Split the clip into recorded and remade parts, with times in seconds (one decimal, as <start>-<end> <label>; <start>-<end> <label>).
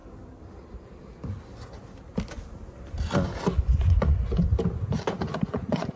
0.0-3.6 recorded; 3.6-4.5 remade; 4.5-5.3 recorded; 5.3-6.0 remade